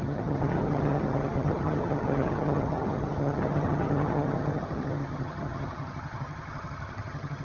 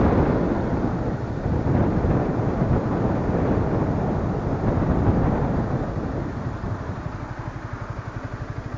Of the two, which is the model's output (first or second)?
first